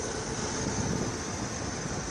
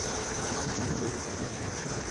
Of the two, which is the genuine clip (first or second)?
first